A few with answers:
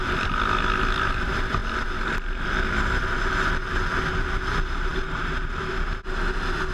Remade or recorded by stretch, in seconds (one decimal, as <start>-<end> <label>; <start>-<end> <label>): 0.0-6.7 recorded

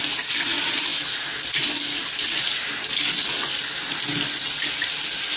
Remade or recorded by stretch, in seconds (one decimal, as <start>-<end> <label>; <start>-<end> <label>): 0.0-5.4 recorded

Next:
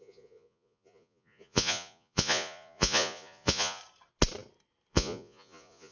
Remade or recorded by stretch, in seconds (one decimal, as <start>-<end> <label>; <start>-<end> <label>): 0.0-3.8 remade; 3.8-4.9 recorded; 4.9-5.9 remade

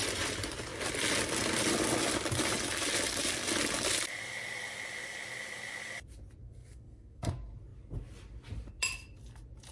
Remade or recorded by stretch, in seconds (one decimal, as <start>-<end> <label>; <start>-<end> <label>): 0.0-6.4 recorded; 6.4-7.3 remade; 7.3-9.7 recorded

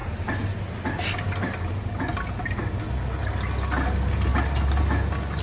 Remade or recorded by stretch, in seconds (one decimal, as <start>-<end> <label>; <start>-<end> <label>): 0.0-5.4 recorded